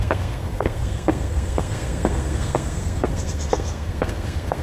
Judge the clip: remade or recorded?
remade